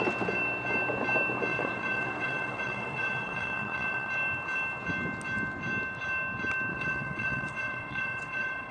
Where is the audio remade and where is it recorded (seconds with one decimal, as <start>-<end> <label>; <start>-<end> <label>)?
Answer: 0.0-1.5 recorded; 1.5-4.1 remade; 4.1-6.7 recorded; 6.7-8.7 remade